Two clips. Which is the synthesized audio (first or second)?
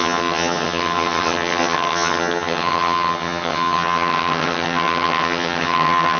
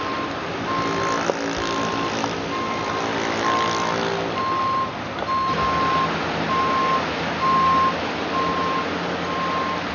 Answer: first